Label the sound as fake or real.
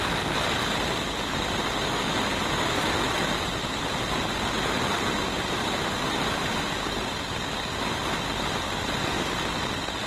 real